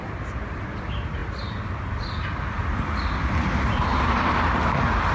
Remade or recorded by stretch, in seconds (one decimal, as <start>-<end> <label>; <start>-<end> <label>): 0.0-5.1 recorded